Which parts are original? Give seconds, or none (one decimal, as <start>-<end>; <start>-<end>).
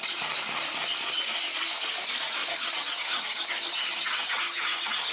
0.0-2.4